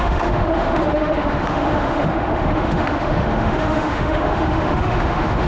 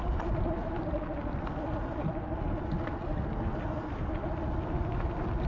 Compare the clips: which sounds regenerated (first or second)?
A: first